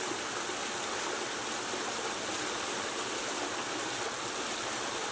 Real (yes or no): yes